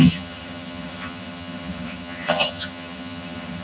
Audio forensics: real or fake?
fake